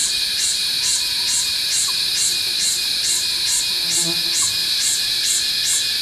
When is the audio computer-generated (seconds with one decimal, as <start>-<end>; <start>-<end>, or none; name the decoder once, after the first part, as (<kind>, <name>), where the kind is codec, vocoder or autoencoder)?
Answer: 0.0-3.6 (vocoder, BigVGAN v2); 4.6-5.5